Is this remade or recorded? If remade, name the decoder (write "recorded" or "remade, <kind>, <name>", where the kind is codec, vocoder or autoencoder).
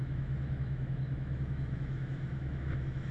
remade, autoencoder, DAC-VAE